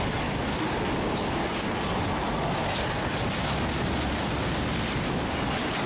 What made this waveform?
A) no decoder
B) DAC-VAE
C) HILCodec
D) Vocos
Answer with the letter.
A